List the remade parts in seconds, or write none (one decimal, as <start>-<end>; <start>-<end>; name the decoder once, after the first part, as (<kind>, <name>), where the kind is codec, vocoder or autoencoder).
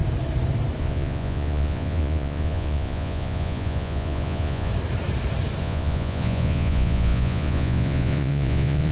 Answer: 0.8-4.7 (vocoder, Vocos); 5.6-8.9